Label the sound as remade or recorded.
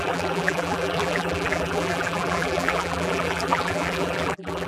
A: remade